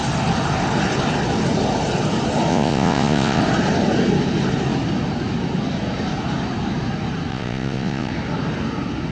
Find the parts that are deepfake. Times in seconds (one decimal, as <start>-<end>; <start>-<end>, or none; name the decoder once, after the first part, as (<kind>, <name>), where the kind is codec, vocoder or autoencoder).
2.5-3.4 (vocoder, Vocos); 7.3-8.1